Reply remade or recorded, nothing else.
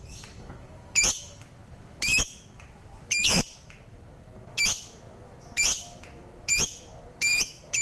remade